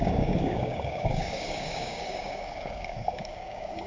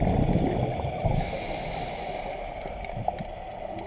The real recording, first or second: second